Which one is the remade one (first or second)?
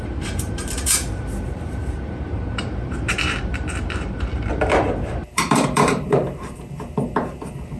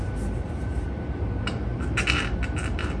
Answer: first